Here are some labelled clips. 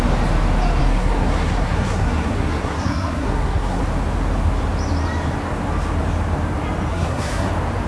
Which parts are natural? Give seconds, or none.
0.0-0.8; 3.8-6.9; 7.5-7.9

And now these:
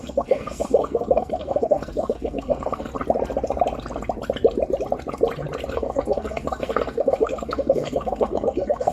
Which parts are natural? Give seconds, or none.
2.9-5.7